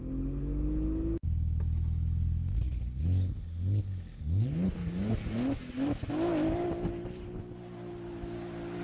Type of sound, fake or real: real